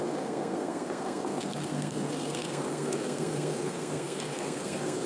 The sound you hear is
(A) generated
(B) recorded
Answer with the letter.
A